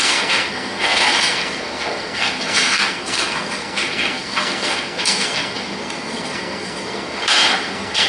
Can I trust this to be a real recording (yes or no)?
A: no